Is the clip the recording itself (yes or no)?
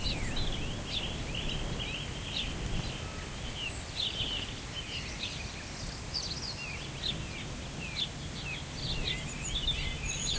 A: yes